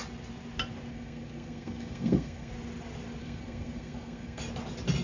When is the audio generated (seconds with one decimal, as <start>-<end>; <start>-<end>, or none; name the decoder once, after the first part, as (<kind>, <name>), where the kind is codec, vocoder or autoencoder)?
0.9-2.5 (codec, SNAC); 3.2-4.4